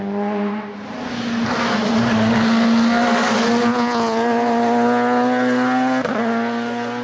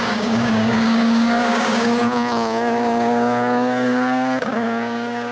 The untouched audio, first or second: first